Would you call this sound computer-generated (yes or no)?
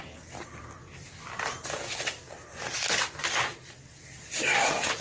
no